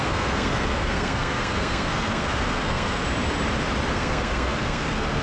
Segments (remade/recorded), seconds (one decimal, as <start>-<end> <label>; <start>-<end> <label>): 0.0-3.0 remade; 3.0-3.9 recorded; 3.9-5.2 remade